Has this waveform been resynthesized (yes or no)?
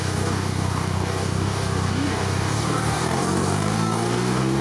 yes